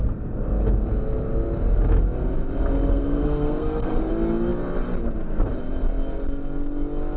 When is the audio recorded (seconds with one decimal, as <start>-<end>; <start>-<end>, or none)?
0.0-2.9; 4.1-7.2